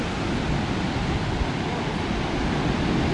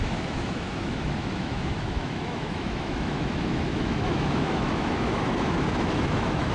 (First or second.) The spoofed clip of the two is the second